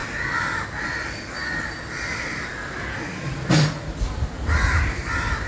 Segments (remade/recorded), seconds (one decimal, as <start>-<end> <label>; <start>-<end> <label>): 0.0-5.5 recorded